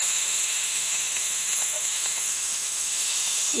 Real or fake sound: fake